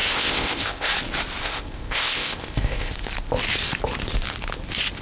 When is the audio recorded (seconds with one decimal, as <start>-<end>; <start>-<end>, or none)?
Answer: 0.9-1.4; 2.9-5.0